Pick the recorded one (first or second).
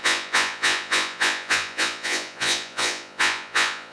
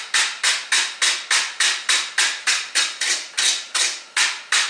second